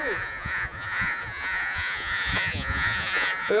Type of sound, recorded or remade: remade